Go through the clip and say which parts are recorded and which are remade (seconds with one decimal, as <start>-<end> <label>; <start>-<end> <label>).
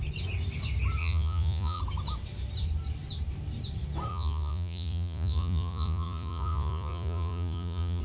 0.0-1.0 recorded; 1.0-1.8 remade; 1.8-4.1 recorded; 4.1-8.0 remade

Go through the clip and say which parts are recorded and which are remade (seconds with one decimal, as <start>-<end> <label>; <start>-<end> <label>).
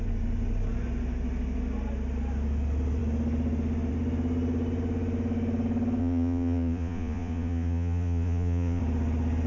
0.0-6.0 recorded; 6.0-8.8 remade; 8.8-9.5 recorded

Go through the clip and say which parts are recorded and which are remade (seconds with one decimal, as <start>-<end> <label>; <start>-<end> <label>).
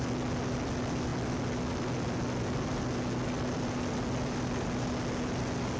0.0-5.8 recorded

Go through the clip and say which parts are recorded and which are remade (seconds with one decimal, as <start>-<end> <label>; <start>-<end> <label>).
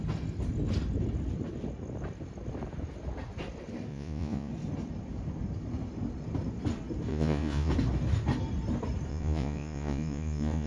0.0-3.9 recorded; 3.9-4.5 remade; 4.5-7.1 recorded; 7.1-7.7 remade; 7.7-9.1 recorded; 9.1-10.7 remade